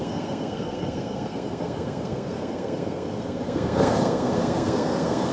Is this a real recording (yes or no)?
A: no